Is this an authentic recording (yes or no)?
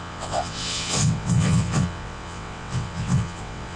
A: no